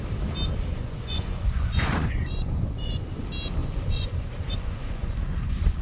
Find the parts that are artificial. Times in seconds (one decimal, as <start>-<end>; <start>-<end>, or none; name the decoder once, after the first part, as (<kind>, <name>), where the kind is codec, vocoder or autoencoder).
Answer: 0.7-3.2 (vocoder, Vocos); 3.6-5.8

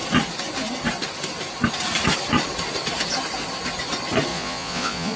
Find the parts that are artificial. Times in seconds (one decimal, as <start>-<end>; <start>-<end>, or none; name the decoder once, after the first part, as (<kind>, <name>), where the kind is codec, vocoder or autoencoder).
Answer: 4.3-5.2 (vocoder, Vocos)

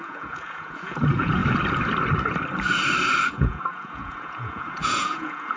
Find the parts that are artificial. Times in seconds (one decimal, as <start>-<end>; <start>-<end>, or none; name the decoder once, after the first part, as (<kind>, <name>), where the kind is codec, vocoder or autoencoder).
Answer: 0.0-1.4 (vocoder, Vocos); 3.3-5.6

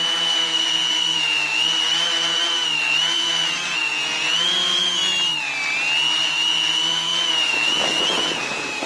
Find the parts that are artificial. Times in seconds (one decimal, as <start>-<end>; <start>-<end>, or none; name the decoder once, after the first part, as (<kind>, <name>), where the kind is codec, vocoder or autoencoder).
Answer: 0.0-5.0 (vocoder, Vocos); 6.2-8.9

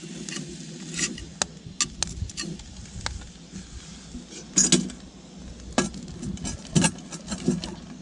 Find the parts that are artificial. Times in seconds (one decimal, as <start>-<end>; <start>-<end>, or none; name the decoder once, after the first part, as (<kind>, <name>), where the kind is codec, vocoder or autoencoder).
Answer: none

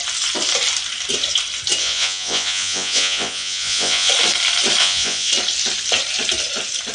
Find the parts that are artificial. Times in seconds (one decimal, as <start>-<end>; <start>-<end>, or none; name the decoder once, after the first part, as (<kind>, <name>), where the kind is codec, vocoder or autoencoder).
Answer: 1.8-4.1 (vocoder, Vocos); 4.8-5.3

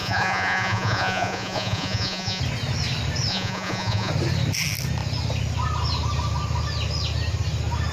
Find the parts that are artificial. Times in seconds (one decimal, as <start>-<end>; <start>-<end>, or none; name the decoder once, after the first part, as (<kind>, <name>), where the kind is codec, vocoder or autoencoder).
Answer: 0.0-2.4 (vocoder, Vocos); 3.3-4.1

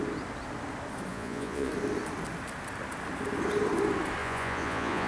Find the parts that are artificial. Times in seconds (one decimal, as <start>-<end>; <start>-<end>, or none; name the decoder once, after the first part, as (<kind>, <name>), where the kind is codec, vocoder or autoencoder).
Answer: 1.1-1.7 (vocoder, Vocos); 4.2-5.1